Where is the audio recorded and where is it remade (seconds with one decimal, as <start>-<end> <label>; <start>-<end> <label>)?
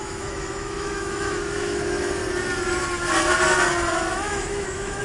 0.0-2.2 remade; 2.2-4.1 recorded; 4.1-5.0 remade